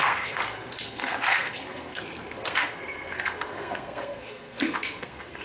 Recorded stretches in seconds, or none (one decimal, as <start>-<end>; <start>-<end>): none